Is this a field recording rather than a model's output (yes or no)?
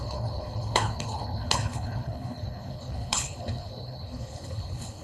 no